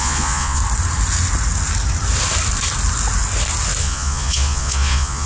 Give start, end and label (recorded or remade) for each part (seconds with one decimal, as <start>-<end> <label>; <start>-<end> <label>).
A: 0.0-0.6 remade; 0.6-3.8 recorded; 3.8-5.3 remade